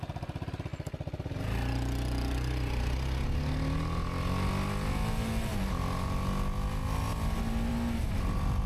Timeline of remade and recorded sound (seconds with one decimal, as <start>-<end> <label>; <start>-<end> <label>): 0.0-8.7 recorded